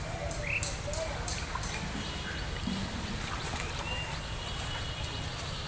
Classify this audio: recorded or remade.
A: recorded